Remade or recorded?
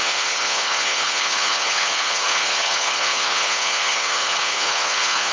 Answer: remade